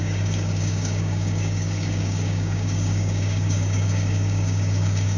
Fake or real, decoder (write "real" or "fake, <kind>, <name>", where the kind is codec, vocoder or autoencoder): fake, codec, DAC